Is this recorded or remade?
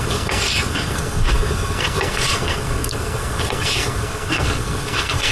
remade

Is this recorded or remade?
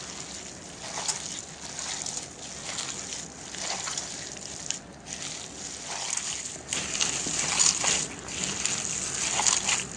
recorded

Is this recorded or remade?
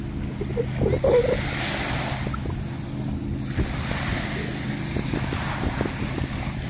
recorded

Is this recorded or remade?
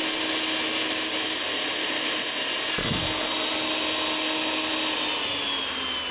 recorded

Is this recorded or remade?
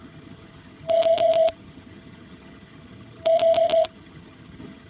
remade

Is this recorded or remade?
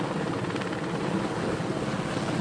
recorded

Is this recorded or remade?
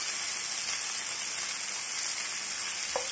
recorded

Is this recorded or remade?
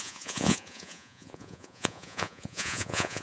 remade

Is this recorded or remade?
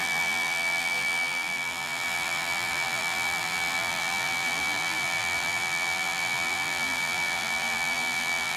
remade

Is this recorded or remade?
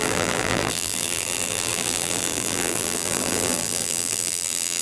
remade